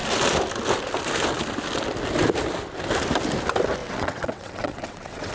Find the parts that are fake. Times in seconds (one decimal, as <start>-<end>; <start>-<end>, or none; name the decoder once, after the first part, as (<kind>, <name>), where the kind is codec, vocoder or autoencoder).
3.8-5.3 (vocoder, WaveNeXt)